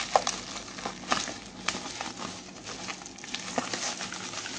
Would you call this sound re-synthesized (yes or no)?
no